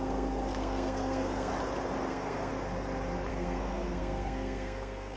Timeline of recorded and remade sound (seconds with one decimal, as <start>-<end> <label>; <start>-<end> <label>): 0.0-1.5 remade; 1.5-2.1 recorded; 2.1-2.5 remade; 2.5-3.3 recorded; 3.3-5.2 remade